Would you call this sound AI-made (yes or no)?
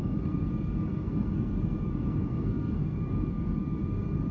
yes